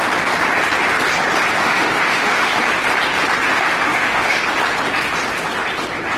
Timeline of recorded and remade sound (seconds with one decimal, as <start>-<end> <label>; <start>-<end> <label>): 0.0-1.6 recorded; 1.6-2.5 remade; 2.5-3.5 recorded; 3.5-4.4 remade; 4.4-6.2 recorded

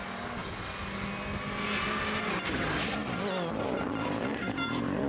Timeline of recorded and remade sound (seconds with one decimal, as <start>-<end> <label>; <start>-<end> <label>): 0.0-5.1 recorded

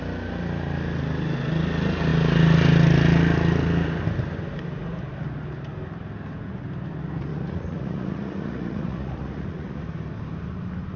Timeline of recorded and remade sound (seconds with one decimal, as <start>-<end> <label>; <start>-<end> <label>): 0.0-7.3 recorded; 7.3-9.8 remade; 9.8-11.0 recorded

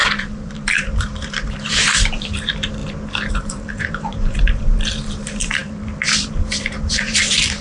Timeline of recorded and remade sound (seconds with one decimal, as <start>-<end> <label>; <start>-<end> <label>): 0.0-2.8 remade; 2.8-3.3 recorded; 3.3-7.6 remade

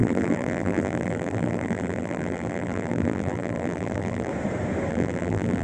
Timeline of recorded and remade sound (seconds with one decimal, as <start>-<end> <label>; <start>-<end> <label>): 0.0-4.3 remade; 4.3-4.9 recorded; 4.9-5.6 remade

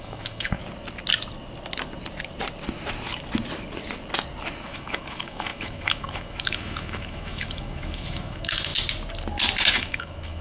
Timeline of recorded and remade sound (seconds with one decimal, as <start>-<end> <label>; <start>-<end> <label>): 0.0-0.6 remade; 0.6-4.5 recorded; 4.5-8.7 remade; 8.7-9.7 recorded; 9.7-10.4 remade

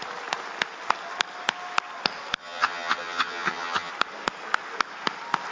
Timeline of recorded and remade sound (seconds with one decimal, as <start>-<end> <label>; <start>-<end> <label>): 0.0-2.4 recorded; 2.4-3.9 remade; 3.9-5.5 recorded